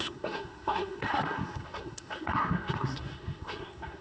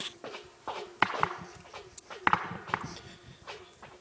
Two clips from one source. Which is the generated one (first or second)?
first